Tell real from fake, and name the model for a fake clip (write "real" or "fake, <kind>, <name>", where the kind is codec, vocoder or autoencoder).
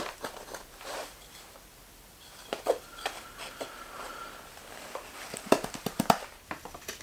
fake, vocoder, BigVGAN v2